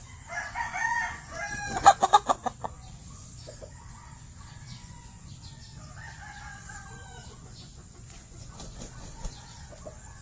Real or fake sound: fake